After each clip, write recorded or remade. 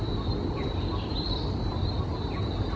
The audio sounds recorded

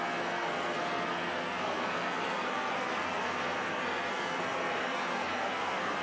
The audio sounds remade